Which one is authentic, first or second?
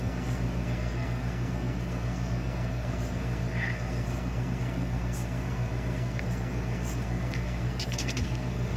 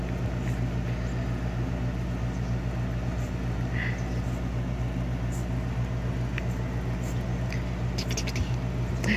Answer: second